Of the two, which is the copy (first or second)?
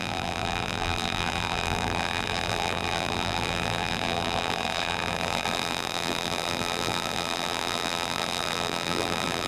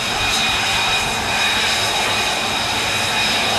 first